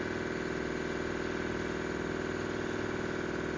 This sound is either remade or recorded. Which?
recorded